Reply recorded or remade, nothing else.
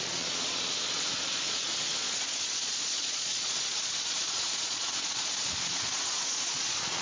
remade